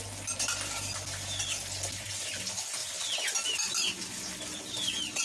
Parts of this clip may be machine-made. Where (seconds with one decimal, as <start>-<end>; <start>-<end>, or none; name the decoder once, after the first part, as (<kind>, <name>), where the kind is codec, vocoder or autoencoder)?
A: none